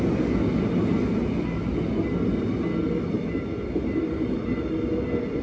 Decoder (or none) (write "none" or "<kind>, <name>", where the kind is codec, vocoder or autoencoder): none